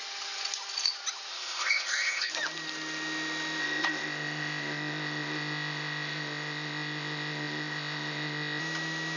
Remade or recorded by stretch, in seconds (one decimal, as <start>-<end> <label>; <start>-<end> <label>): 0.0-1.3 recorded; 1.3-2.3 remade; 2.3-3.6 recorded; 3.6-8.6 remade; 8.6-9.2 recorded